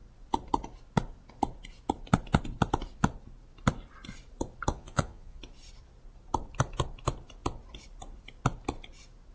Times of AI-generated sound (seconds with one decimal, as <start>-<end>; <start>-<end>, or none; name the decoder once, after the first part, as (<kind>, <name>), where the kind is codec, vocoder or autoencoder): 4.7-5.4 (vocoder, Vocos)